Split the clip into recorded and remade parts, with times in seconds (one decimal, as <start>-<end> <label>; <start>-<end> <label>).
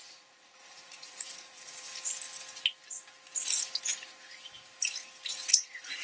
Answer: 0.0-1.9 remade; 1.9-5.5 recorded; 5.5-6.0 remade